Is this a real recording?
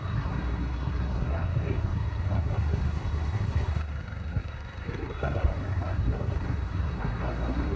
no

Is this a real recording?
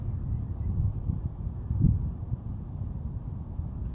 no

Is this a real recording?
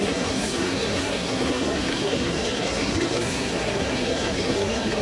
no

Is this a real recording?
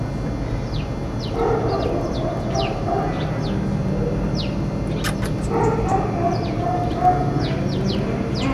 yes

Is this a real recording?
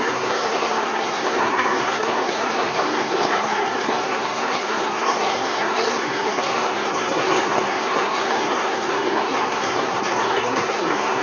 no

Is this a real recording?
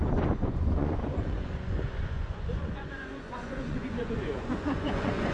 no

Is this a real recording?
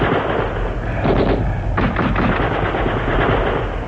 yes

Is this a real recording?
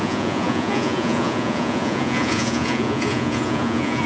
no